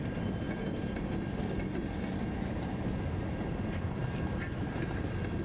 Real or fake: real